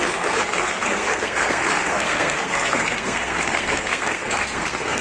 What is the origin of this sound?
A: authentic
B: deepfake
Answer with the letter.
B